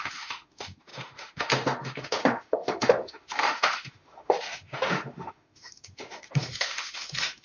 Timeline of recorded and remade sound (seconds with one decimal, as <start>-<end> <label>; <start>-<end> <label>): 0.0-7.4 remade